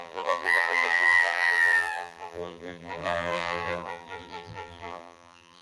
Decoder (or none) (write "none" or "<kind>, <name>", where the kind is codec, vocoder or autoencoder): vocoder, BigVGAN v2